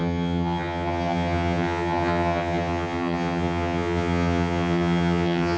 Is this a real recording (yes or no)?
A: no